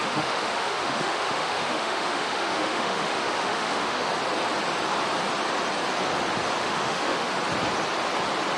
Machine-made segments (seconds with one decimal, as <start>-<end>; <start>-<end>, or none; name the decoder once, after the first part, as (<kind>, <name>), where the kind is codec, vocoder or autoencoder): 0.0-4.1 (autoencoder, DAC-VAE); 6.6-7.3